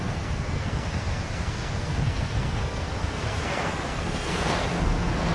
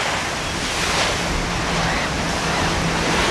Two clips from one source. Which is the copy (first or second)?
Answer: first